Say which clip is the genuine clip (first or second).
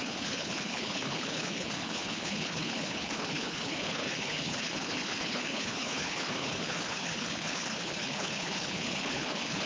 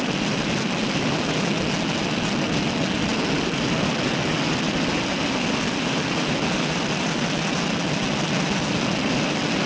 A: second